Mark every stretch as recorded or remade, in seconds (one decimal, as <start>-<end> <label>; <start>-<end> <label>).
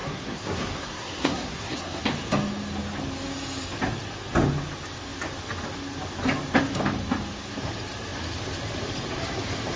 0.0-2.0 remade; 2.0-9.8 recorded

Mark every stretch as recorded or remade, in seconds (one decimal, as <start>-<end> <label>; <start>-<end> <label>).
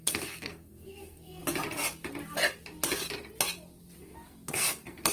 0.0-1.4 remade; 1.4-4.0 recorded; 4.0-5.1 remade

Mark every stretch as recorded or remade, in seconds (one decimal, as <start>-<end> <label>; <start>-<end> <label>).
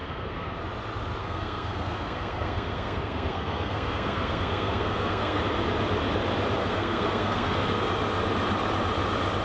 0.0-0.6 remade; 0.6-1.2 recorded; 1.2-5.4 remade; 5.4-6.6 recorded; 6.6-7.8 remade; 7.8-9.4 recorded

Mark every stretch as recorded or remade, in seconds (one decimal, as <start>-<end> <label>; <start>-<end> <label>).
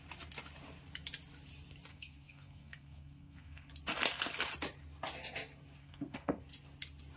0.0-1.9 recorded; 1.9-3.7 remade; 3.7-5.8 recorded; 5.8-6.4 remade; 6.4-7.2 recorded